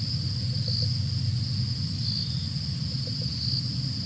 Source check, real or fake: real